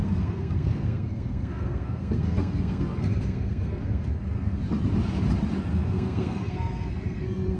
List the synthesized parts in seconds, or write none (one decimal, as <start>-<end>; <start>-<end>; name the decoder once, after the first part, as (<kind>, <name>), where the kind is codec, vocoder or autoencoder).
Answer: 0.0-4.6 (codec, SNAC); 5.7-7.6